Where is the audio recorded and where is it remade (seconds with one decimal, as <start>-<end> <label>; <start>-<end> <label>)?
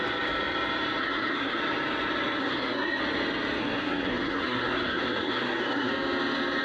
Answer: 0.0-1.0 recorded; 1.0-1.6 remade; 1.6-2.4 recorded; 2.4-3.0 remade; 3.0-3.6 recorded; 3.6-5.9 remade; 5.9-6.6 recorded